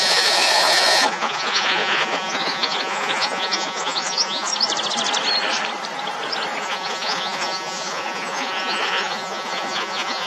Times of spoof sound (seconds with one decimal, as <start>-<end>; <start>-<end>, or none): 0.0-4.5; 6.6-10.3